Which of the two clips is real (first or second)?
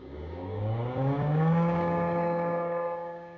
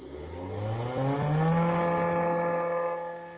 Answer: second